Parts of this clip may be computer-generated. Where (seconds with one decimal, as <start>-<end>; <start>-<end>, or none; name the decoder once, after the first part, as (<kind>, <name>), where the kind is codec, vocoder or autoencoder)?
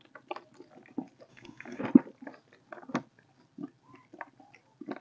1.3-1.8 (codec, DAC)